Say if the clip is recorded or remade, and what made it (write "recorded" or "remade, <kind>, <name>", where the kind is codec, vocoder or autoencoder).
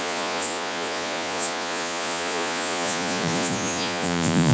remade, vocoder, Vocos